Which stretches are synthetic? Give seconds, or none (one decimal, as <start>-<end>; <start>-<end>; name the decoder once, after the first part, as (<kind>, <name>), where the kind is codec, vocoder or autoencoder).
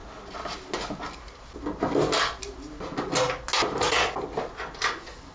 none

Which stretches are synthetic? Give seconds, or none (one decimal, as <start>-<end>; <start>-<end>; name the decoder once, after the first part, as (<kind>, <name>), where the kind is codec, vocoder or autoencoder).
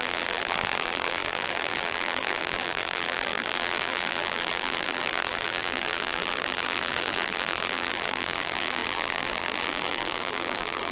0.0-10.9 (vocoder, BigVGAN v2)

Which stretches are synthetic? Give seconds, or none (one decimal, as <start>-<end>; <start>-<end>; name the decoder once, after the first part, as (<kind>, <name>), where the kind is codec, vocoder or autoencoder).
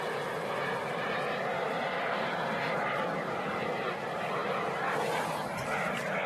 none